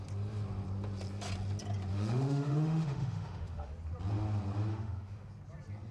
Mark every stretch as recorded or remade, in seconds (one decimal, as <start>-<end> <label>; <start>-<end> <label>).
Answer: 0.0-1.9 recorded; 1.9-3.7 remade; 3.7-4.7 recorded; 4.7-5.3 remade; 5.3-5.9 recorded